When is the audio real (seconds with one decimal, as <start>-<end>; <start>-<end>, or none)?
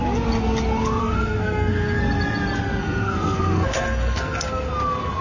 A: 0.0-1.0; 2.0-2.8; 4.7-5.2